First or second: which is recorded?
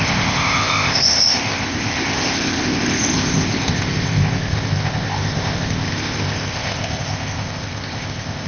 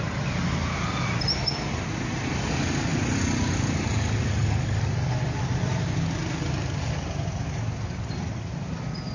second